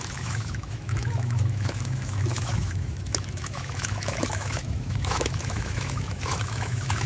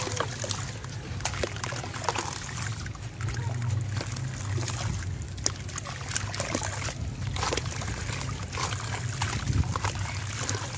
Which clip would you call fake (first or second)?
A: first